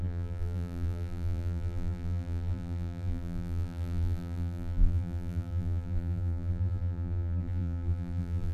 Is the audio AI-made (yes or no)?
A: yes